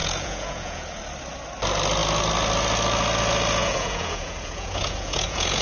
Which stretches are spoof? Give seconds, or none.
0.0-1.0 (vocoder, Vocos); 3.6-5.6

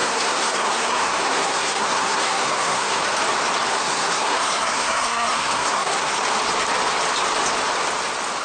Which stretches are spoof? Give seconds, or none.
0.0-3.0 (codec, SNAC); 3.7-6.2

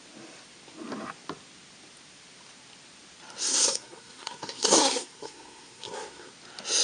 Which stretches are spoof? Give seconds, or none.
3.4-6.3 (codec, SNAC)

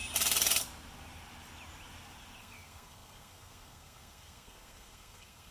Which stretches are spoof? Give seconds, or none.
2.4-5.5 (codec, SNAC)

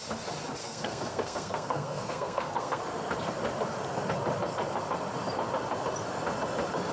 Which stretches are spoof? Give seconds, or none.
0.6-2.8 (codec, SNAC)

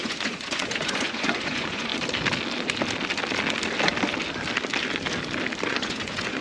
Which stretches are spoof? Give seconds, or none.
0.0-1.9 (vocoder, Vocos); 5.7-6.4

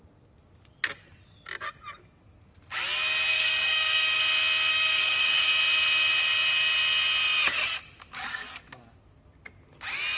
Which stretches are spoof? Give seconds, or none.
3.3-4.2 (codec, DAC); 4.7-5.5

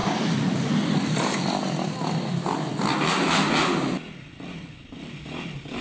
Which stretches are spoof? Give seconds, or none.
none